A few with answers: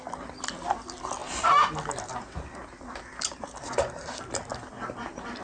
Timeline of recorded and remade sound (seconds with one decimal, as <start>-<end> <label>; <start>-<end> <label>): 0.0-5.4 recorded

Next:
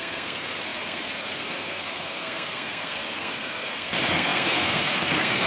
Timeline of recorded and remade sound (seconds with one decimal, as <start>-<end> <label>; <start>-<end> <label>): 0.0-5.5 remade

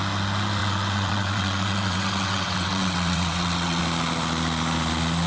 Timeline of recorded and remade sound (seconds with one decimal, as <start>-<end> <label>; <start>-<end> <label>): 0.0-0.6 recorded; 0.6-3.8 remade; 3.8-5.3 recorded

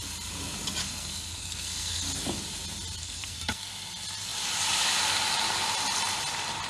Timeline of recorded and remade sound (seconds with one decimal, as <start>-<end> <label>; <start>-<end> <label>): 0.0-0.8 recorded; 0.8-2.0 remade; 2.0-3.0 recorded; 3.0-3.7 remade; 3.7-6.7 recorded